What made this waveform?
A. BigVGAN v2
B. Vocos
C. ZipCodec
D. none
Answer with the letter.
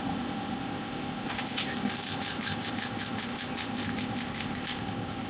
C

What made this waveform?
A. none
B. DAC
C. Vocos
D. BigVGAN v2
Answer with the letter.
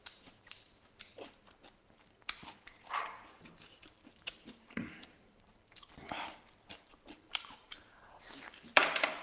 D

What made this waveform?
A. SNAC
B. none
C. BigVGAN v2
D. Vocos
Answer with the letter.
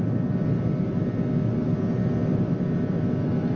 B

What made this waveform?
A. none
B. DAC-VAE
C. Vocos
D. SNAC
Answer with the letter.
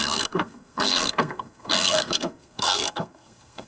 D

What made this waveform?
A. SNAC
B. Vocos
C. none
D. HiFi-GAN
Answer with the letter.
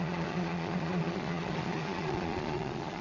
B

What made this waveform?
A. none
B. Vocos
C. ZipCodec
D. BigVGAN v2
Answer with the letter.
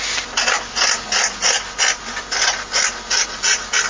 A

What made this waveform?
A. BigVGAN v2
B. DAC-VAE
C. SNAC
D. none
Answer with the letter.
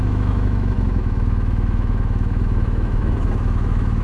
B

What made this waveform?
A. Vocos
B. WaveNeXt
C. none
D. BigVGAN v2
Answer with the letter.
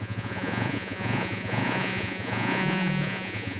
A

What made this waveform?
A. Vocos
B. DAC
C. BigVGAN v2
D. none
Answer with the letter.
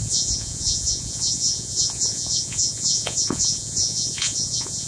A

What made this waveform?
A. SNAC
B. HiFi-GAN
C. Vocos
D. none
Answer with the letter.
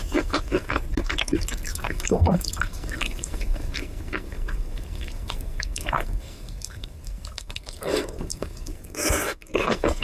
A